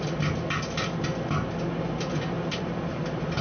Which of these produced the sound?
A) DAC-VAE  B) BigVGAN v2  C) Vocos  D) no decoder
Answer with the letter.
D